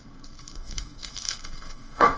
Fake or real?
fake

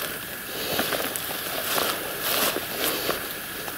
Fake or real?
real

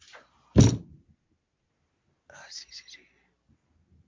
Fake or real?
real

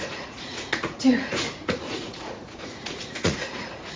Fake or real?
fake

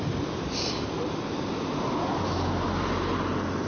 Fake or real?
real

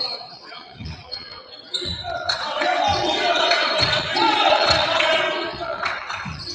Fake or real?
fake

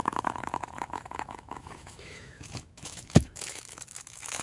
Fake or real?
fake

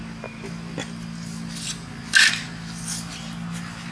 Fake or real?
real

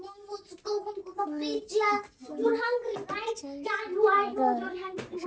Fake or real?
real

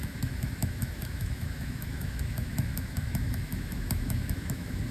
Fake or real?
fake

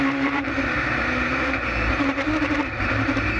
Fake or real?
fake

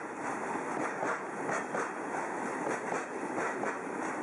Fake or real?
real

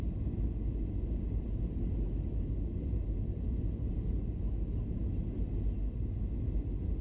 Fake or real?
real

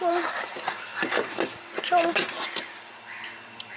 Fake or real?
real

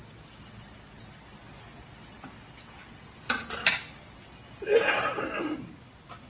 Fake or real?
real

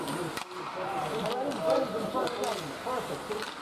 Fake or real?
real